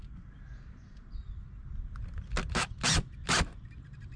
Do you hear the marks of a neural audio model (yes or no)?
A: no